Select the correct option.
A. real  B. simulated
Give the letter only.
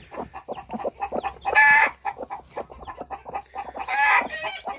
A